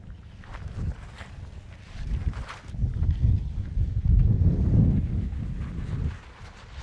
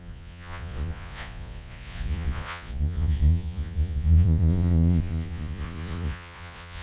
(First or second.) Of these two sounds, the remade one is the second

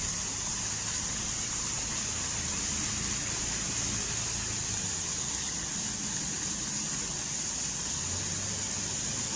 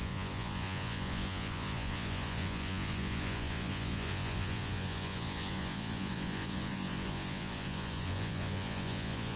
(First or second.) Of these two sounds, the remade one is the second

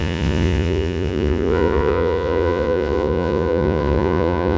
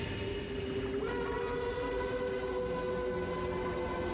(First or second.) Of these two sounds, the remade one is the first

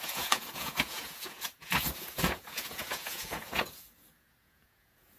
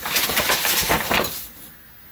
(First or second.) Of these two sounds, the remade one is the first